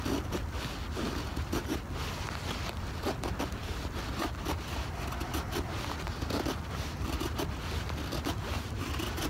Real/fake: real